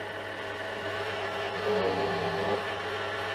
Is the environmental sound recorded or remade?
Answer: recorded